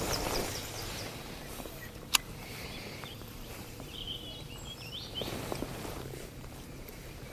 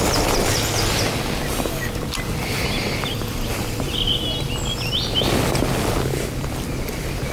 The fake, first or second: first